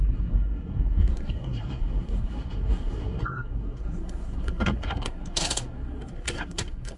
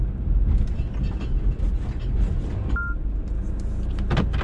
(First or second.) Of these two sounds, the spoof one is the first